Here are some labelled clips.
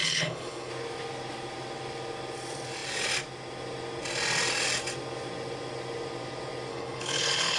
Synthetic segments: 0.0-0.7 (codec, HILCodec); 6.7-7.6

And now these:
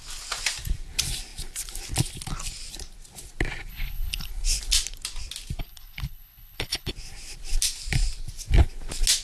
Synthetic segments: 3.7-4.3 (codec, HILCodec); 5.6-6.9

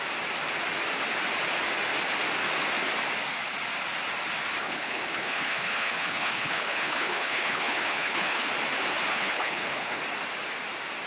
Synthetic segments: 4.6-8.5 (codec, HILCodec); 9.1-10.0

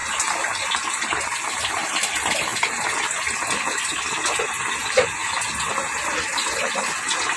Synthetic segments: none

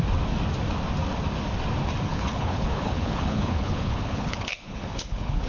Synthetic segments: 2.1-5.5 (codec, HILCodec)